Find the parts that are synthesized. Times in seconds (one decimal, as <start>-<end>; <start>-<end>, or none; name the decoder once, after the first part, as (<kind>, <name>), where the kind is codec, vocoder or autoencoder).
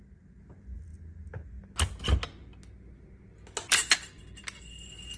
none